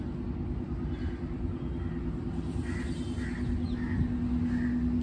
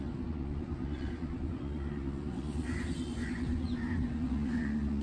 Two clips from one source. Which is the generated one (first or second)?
second